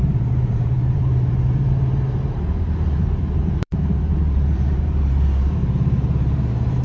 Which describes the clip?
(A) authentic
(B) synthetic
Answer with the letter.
B